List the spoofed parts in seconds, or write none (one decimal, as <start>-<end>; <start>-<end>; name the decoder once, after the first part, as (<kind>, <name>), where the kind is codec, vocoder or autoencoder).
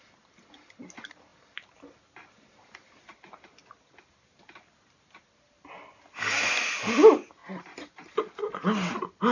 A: 7.4-8.4 (vocoder, BigVGAN v2)